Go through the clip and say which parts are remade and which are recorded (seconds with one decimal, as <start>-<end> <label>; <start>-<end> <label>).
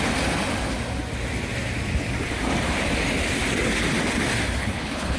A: 0.0-4.6 recorded; 4.6-5.2 remade